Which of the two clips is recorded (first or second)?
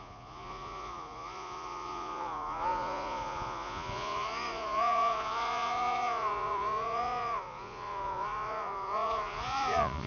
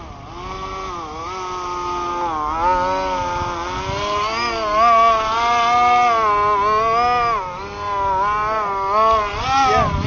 second